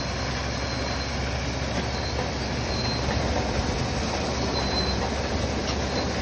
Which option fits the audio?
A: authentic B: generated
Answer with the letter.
A